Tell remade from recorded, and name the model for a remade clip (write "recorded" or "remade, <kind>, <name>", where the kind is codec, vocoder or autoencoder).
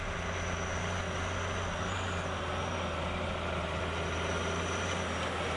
recorded